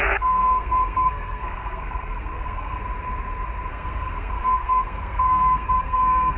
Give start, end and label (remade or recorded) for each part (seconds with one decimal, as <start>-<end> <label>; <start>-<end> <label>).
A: 0.0-2.8 remade; 2.8-3.7 recorded; 3.7-6.4 remade